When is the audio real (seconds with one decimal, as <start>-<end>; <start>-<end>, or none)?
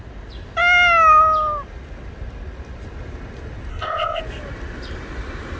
0.0-3.7; 4.2-5.6